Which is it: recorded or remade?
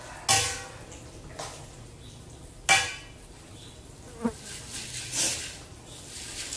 recorded